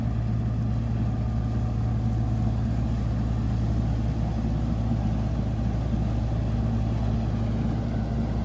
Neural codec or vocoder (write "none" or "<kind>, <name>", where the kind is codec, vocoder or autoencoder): none